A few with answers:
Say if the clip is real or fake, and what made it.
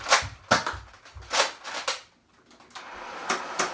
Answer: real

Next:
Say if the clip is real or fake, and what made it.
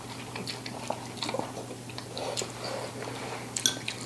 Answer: real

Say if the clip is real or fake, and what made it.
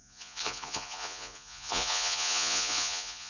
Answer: fake, vocoder, Vocos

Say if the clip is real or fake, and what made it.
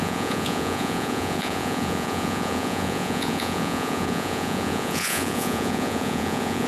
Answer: fake, vocoder, Vocos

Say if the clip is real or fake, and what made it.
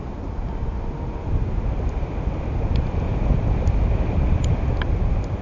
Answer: real